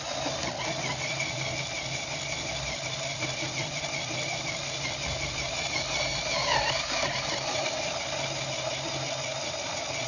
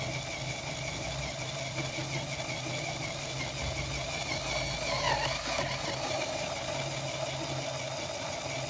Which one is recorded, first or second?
second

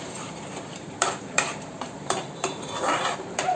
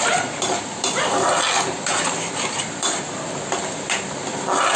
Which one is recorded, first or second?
second